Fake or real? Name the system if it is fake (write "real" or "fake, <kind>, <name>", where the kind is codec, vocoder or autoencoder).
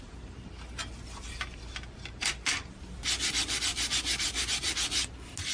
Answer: real